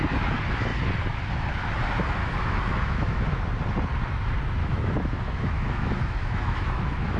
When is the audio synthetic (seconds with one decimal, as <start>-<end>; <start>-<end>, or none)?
2.2-3.4; 4.6-7.2